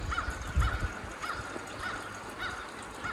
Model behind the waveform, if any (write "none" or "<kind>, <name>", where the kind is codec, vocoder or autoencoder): none